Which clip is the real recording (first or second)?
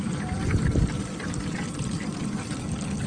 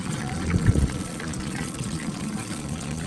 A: first